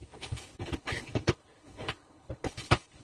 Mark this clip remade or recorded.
remade